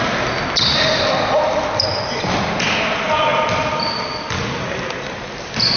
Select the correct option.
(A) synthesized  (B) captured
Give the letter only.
B